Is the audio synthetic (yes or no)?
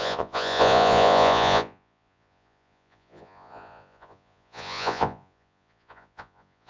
yes